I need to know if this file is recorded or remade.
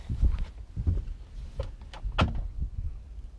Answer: recorded